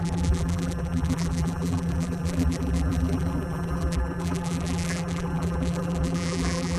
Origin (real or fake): fake